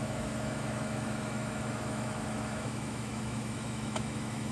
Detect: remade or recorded remade